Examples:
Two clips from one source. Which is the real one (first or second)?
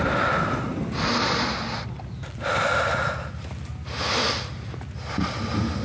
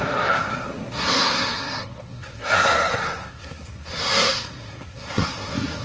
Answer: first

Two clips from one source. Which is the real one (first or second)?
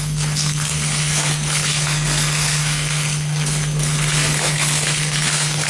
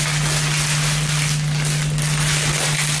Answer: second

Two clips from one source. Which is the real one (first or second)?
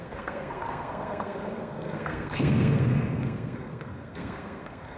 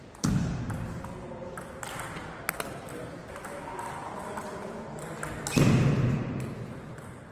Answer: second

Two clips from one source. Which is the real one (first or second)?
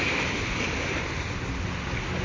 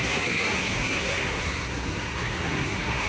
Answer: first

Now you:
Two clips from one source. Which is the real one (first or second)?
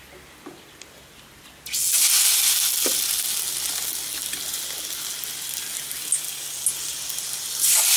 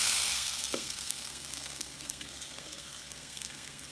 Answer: first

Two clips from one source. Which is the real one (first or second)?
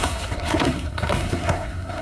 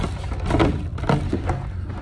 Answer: second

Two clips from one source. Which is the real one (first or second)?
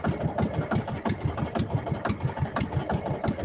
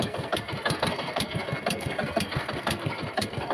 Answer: first